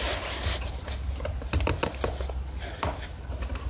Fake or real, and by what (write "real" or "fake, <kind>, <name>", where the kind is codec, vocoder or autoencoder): real